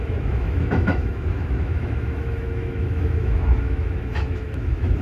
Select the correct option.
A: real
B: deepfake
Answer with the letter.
B